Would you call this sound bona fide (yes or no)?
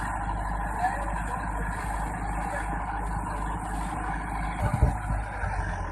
yes